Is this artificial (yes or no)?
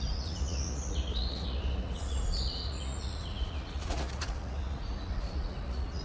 yes